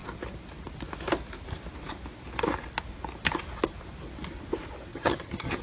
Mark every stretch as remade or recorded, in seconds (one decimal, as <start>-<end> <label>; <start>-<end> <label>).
0.0-4.9 recorded; 4.9-5.6 remade

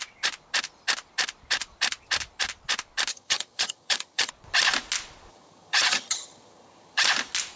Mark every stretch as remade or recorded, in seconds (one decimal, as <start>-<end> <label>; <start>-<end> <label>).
0.0-3.1 recorded; 3.1-4.3 remade; 4.3-5.3 recorded; 5.3-7.0 remade; 7.0-7.6 recorded

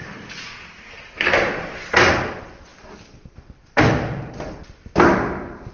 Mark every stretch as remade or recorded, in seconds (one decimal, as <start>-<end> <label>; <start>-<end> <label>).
0.0-5.7 recorded